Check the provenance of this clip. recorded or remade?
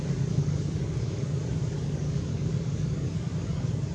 remade